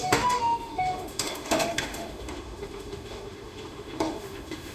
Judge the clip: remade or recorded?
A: remade